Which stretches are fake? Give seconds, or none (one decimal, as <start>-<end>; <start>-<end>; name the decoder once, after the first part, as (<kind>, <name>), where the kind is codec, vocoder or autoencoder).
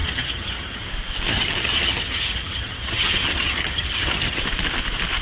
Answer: 0.0-0.9 (vocoder, HiFi-GAN); 1.3-4.4